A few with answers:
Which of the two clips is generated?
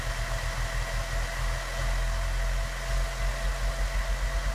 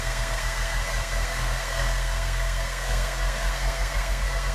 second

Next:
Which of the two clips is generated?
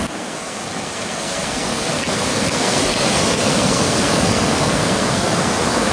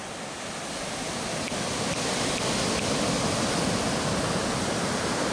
first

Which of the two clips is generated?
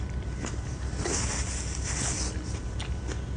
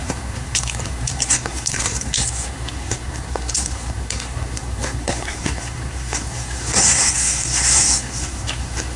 second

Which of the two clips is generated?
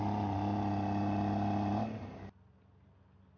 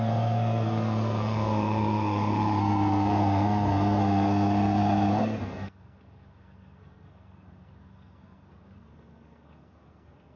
second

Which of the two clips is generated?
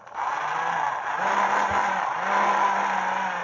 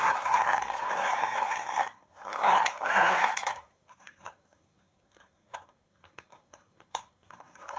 second